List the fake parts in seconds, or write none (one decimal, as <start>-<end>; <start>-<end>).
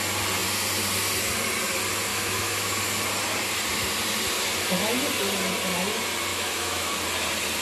2.1-2.8; 6.3-6.9